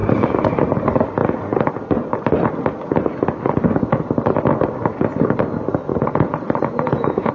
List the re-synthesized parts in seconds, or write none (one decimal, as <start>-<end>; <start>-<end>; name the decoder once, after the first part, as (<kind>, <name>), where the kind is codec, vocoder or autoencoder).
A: 5.9-7.3 (vocoder, Vocos)